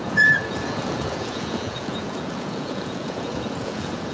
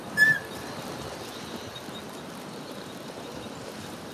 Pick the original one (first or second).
second